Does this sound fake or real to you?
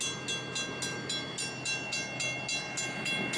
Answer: real